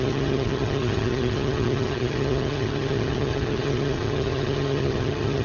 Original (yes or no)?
no